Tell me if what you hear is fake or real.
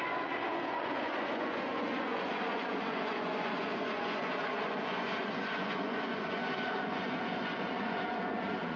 fake